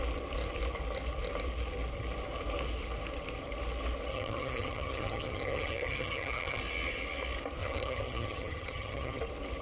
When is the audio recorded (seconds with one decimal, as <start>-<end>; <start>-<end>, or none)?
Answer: 0.0-4.1; 6.6-7.6; 9.2-9.6